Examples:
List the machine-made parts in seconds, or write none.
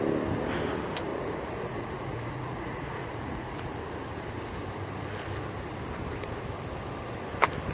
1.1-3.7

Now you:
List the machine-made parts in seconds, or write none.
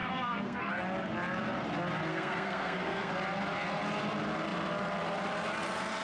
0.0-0.7; 2.1-3.1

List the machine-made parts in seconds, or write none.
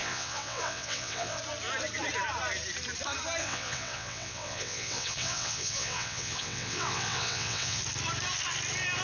0.0-1.4; 3.4-7.8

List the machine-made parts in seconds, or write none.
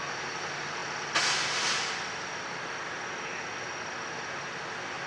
none